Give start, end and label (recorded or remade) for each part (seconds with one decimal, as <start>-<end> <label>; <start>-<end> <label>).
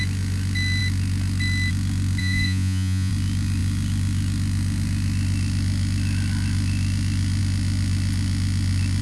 0.0-2.2 recorded; 2.2-3.1 remade; 3.1-9.0 recorded